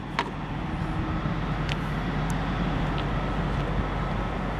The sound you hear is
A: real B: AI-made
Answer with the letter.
A